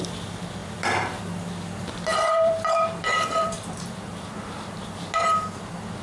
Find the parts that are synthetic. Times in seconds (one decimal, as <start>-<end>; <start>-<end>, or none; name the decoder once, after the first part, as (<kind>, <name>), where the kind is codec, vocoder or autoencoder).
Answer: 0.6-1.2 (vocoder, BigVGAN v2); 2.1-5.0